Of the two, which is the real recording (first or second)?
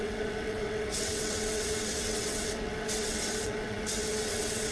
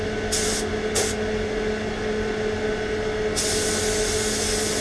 second